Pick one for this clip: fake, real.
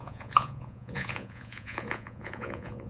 fake